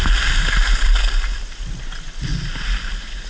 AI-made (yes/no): no